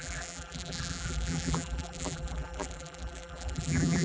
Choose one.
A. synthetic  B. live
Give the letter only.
A